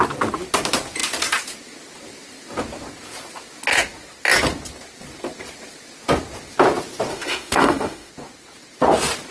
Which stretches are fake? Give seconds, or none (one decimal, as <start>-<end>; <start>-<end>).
7.1-8.1